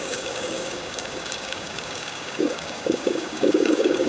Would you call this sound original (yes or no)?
no